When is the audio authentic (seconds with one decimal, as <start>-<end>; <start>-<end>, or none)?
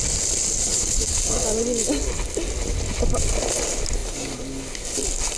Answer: 0.0-0.6; 1.2-5.4